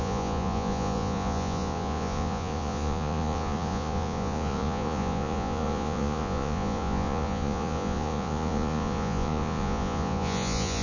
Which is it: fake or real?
fake